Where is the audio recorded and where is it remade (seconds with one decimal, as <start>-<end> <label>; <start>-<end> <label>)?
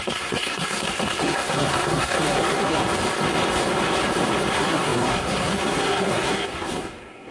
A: 0.0-2.8 remade; 2.8-4.5 recorded; 4.5-7.3 remade